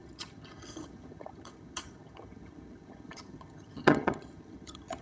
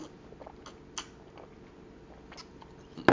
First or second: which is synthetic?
first